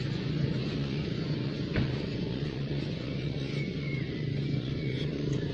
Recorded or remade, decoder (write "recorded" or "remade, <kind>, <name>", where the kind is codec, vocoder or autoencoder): remade, vocoder, Vocos